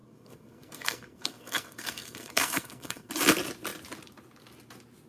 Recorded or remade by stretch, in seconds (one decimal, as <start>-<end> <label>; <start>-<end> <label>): 0.0-3.1 remade; 3.1-5.1 recorded